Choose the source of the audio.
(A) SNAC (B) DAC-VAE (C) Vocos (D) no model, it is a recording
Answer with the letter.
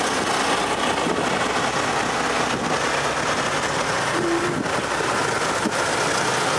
D